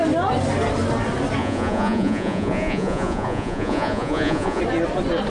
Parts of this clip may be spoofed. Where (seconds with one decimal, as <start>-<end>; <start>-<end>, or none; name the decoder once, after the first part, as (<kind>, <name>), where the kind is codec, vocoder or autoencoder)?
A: 1.4-4.6 (vocoder, Vocos)